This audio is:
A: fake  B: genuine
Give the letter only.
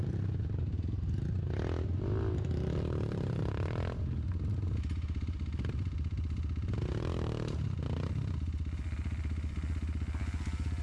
B